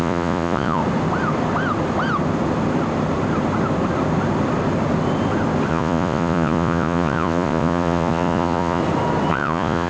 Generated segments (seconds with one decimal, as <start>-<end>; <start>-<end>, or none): 0.0-0.8; 5.7-8.8; 9.3-9.9

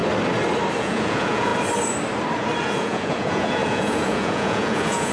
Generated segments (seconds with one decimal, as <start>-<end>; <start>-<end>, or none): 0.8-1.5; 2.6-5.1

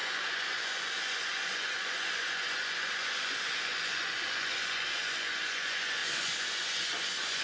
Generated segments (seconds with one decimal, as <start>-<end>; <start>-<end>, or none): 0.0-7.4

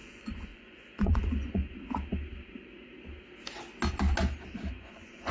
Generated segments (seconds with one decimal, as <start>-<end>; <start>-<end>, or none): 0.0-1.6; 4.7-5.3

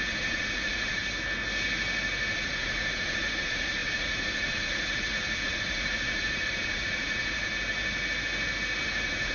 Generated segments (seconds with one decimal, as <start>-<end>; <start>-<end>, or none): 0.0-1.0; 2.3-7.5; 8.8-9.3